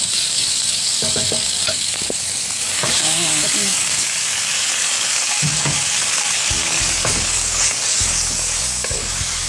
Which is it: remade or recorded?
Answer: remade